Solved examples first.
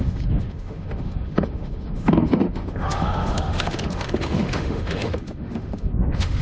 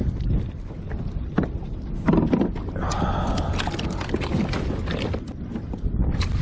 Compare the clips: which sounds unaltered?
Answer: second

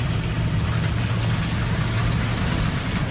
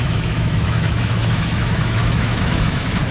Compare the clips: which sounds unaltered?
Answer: first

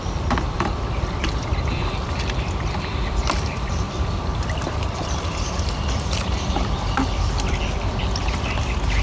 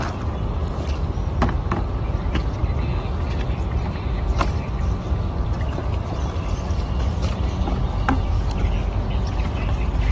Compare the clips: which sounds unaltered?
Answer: second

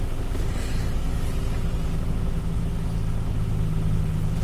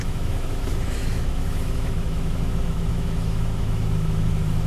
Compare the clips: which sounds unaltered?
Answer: first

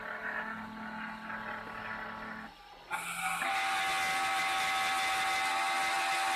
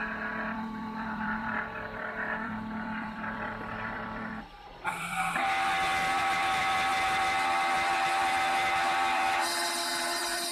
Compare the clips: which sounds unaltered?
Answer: first